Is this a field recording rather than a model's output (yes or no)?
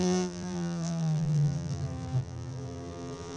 no